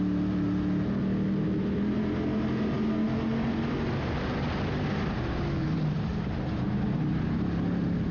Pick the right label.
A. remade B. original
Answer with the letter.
B